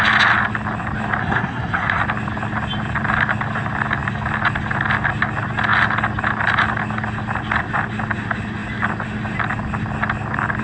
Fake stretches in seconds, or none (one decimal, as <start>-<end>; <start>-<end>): 1.2-2.0